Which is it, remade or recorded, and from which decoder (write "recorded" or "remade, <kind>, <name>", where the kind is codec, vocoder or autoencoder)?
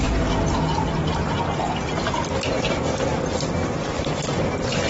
recorded